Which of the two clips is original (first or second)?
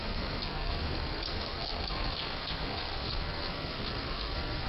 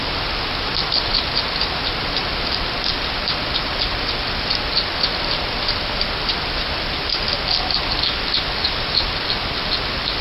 second